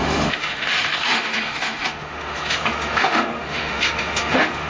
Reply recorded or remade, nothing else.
remade